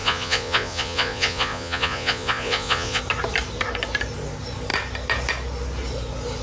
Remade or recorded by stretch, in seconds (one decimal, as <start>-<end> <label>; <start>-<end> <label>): 0.0-3.0 remade; 3.0-6.4 recorded